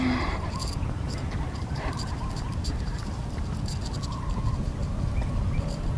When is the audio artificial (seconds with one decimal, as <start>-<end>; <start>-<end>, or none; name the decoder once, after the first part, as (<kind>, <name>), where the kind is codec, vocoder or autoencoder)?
0.6-3.0 (vocoder, BigVGAN v2); 4.8-6.0

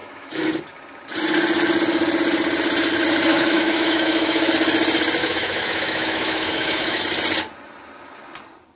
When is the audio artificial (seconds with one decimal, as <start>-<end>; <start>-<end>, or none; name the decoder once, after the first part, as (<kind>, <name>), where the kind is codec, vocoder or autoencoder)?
0.0-0.5 (autoencoder, DAC-VAE); 3.3-4.5; 5.2-7.0